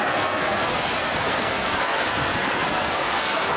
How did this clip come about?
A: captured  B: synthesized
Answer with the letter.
B